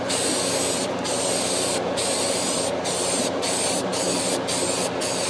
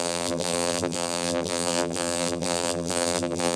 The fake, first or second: second